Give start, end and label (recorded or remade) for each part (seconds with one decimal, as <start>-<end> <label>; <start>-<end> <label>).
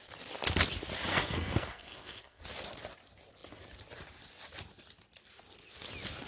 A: 0.0-1.1 recorded; 1.1-2.4 remade; 2.4-6.3 recorded